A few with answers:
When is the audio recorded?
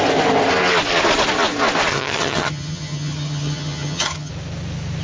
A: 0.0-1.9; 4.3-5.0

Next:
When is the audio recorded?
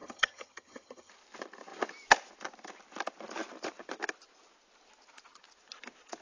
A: 1.1-6.2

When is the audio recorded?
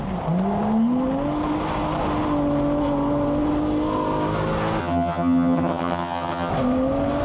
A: 0.0-4.8; 6.5-7.2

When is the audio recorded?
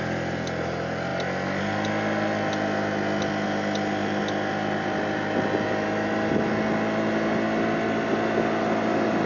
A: 0.0-9.3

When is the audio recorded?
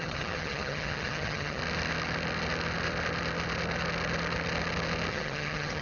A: 1.6-5.1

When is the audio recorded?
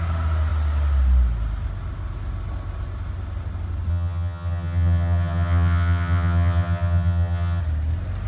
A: 0.0-3.9; 7.6-8.3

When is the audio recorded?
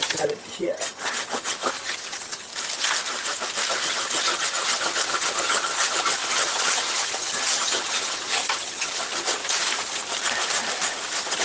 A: 2.5-3.7; 9.4-11.4